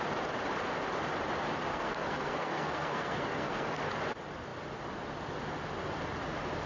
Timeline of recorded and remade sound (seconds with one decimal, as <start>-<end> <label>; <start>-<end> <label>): 0.0-1.7 recorded; 1.7-3.8 remade; 3.8-6.7 recorded

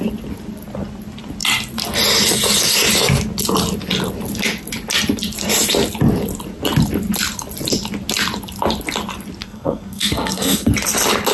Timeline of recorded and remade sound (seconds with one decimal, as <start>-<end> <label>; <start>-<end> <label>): 0.0-9.4 recorded; 9.4-10.7 remade; 10.7-11.3 recorded

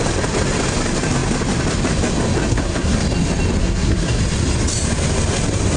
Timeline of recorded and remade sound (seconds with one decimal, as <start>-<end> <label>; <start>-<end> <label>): 0.0-2.5 recorded; 2.5-3.0 remade; 3.0-3.6 recorded; 3.6-4.2 remade; 4.2-5.8 recorded